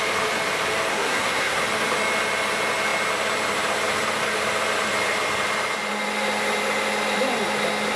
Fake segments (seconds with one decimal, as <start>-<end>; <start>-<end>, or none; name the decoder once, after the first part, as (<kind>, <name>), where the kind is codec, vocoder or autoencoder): 0.9-1.6 (codec, SNAC)